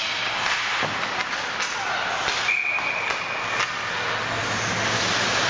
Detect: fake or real real